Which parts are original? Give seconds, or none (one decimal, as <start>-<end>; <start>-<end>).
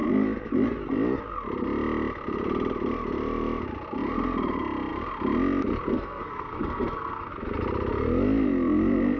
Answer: 0.0-5.9; 7.3-9.2